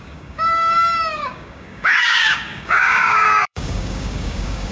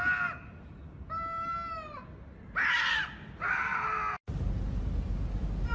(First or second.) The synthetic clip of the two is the first